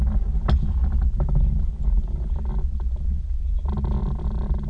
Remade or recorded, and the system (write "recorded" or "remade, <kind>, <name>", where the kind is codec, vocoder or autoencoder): recorded